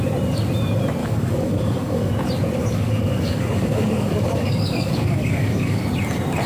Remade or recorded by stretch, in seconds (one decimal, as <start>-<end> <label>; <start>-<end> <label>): 0.0-1.0 recorded; 1.0-2.1 remade; 2.1-2.6 recorded; 2.6-5.8 remade; 5.8-6.5 recorded